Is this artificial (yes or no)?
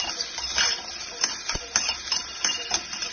no